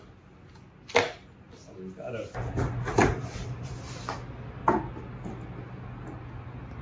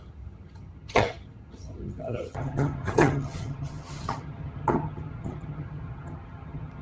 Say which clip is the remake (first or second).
second